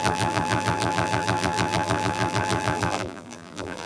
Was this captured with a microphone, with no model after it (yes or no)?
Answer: no